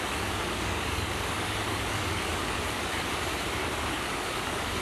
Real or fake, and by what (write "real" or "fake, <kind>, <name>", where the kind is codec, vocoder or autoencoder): fake, codec, DAC